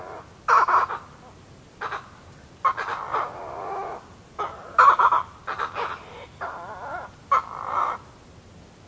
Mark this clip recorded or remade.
recorded